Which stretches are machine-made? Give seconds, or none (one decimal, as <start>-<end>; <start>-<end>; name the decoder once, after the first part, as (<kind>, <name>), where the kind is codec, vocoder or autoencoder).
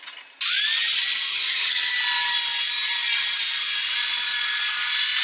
1.3-1.9 (vocoder, HiFi-GAN)